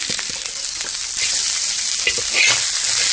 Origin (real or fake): real